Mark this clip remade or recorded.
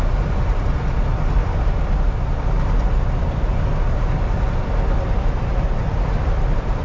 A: remade